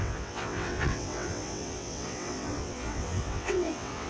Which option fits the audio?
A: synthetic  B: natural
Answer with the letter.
A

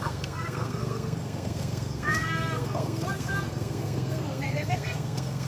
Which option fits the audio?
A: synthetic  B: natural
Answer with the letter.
A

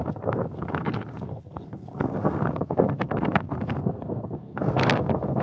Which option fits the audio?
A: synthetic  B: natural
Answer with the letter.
A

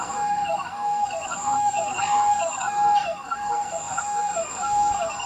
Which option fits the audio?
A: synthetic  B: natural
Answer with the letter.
A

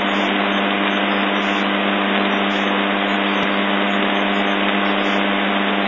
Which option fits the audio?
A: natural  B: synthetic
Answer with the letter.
A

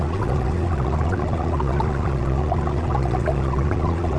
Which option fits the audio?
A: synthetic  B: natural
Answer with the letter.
A